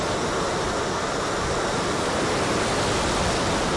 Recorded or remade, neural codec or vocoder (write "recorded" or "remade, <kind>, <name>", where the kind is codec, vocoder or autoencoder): recorded